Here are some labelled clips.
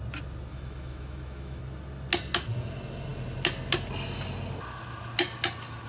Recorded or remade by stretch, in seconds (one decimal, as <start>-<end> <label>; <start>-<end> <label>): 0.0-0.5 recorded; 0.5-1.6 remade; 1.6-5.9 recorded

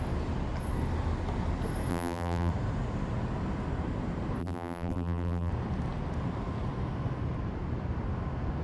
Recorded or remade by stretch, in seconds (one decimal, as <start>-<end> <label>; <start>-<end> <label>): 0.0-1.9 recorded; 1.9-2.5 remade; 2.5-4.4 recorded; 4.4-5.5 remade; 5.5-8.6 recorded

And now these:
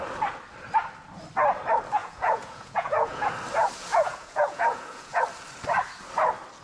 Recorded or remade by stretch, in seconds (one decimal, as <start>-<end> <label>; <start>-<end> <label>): 0.0-2.0 recorded; 2.0-3.3 remade; 3.3-3.9 recorded; 3.9-5.2 remade; 5.2-6.6 recorded

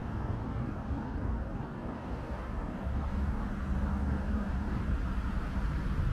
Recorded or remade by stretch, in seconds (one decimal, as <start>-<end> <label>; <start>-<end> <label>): 0.0-3.4 remade; 3.4-3.9 recorded; 3.9-4.8 remade; 4.8-6.1 recorded